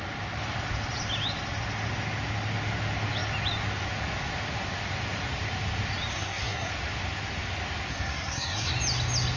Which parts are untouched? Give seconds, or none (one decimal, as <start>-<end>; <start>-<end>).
0.0-6.1; 6.7-7.9; 8.7-9.4